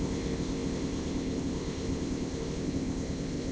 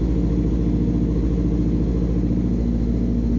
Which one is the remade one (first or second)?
first